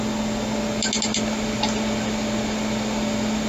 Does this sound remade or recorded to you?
recorded